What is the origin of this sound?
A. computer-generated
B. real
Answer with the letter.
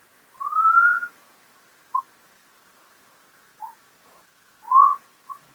A